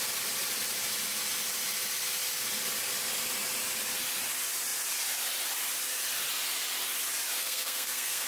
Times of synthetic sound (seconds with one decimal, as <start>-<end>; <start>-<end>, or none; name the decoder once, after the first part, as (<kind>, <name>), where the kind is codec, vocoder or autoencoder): 7.4-8.3 (codec, SNAC)